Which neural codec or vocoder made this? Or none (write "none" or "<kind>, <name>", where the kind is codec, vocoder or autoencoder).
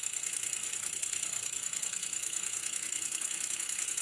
codec, SNAC